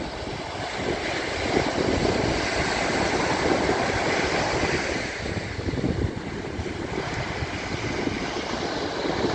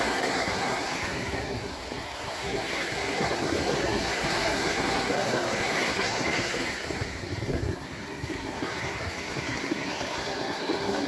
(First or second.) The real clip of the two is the first